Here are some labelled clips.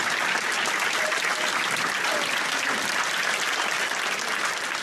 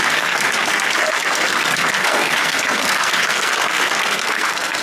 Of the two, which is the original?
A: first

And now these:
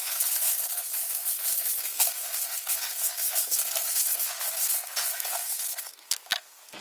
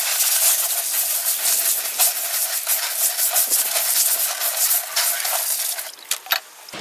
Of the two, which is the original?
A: second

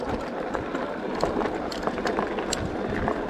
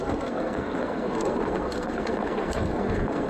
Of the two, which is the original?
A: first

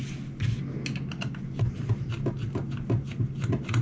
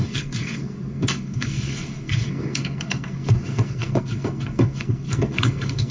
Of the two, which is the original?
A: first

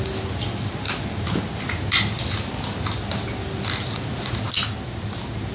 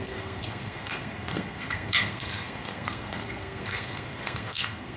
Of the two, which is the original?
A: first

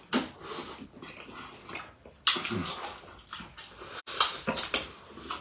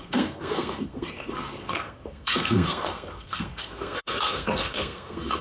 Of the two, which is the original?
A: first